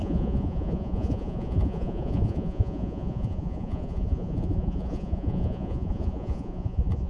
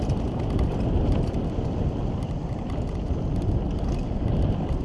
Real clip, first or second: second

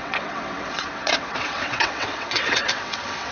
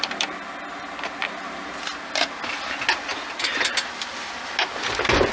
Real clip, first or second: second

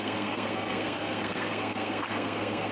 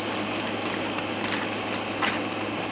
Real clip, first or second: second